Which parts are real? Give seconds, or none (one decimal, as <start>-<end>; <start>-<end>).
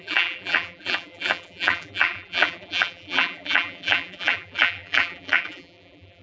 none